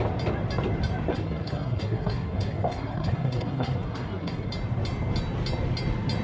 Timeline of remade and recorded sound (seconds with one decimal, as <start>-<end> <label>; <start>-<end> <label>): 0.0-1.1 recorded; 1.1-4.5 remade; 4.5-6.2 recorded